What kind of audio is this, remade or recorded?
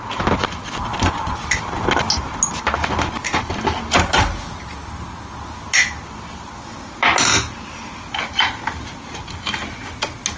recorded